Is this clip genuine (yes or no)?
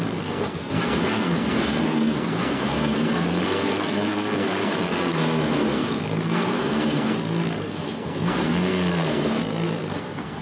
no